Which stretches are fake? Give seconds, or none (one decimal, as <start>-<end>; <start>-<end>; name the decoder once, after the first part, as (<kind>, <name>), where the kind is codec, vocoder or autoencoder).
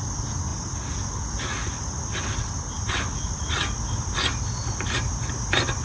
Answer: none